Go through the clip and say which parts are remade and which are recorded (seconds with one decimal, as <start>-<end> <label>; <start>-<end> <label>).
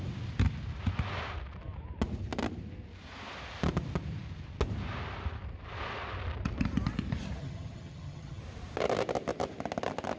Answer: 0.0-7.4 recorded; 7.4-8.4 remade; 8.4-10.2 recorded